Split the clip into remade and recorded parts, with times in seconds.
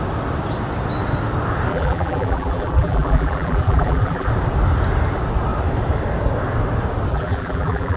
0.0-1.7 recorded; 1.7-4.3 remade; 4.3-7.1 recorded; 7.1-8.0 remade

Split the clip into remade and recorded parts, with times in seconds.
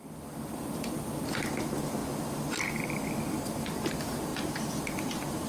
0.0-4.3 recorded; 4.3-5.5 remade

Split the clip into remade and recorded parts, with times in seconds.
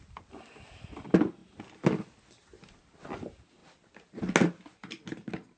0.0-3.6 recorded; 3.6-4.2 remade; 4.2-5.6 recorded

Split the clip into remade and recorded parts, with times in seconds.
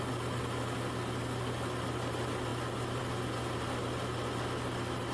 0.0-5.1 recorded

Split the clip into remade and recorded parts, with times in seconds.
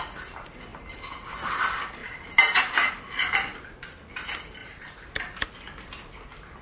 0.0-2.0 recorded; 2.0-2.6 remade; 2.6-3.5 recorded; 3.5-4.0 remade; 4.0-4.6 recorded; 4.6-5.5 remade; 5.5-6.6 recorded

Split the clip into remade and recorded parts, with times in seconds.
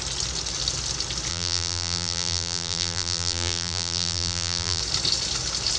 0.0-1.3 recorded; 1.3-4.8 remade; 4.8-5.8 recorded